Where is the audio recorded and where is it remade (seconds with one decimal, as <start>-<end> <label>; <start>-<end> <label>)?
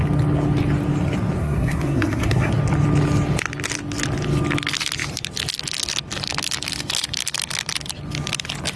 0.0-1.4 recorded; 1.4-2.5 remade; 2.5-8.8 recorded